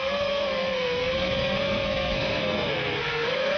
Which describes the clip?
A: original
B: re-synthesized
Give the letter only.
B